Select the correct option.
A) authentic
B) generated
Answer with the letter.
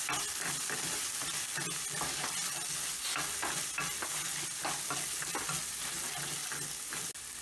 A